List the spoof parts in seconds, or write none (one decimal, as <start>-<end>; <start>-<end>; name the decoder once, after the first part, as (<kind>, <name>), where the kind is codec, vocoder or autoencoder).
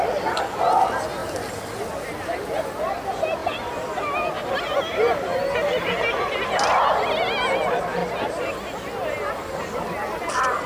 none